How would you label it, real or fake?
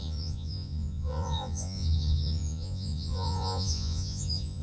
fake